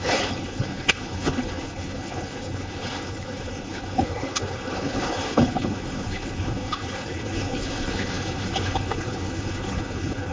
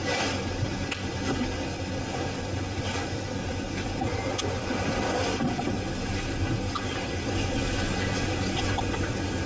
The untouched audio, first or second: second